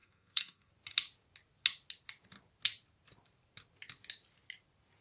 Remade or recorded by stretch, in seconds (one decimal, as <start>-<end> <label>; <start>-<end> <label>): 0.0-0.7 remade; 0.7-5.0 recorded